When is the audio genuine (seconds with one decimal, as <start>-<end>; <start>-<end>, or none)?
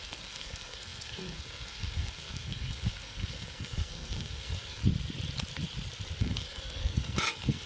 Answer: 4.8-6.2